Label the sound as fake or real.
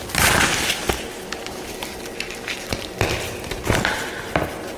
real